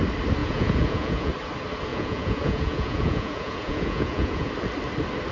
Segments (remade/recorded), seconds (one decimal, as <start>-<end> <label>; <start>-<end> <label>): 0.0-0.4 recorded; 0.4-1.3 remade; 1.3-1.9 recorded; 1.9-4.5 remade; 4.5-5.3 recorded